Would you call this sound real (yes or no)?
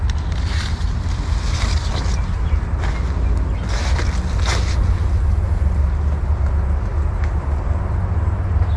yes